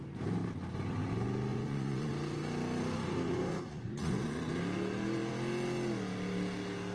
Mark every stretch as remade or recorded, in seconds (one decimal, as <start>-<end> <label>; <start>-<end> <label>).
0.0-1.5 recorded; 1.5-2.1 remade; 2.1-3.0 recorded; 3.0-4.6 remade; 4.6-6.9 recorded